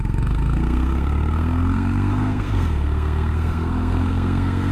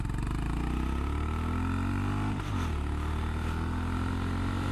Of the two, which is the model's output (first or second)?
first